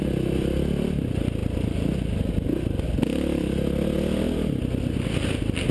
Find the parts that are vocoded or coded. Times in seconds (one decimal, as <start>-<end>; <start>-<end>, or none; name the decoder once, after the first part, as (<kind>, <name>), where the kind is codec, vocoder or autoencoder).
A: none